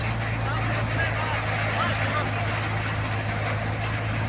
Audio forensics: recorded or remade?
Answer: recorded